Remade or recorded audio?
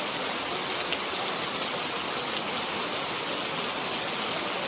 recorded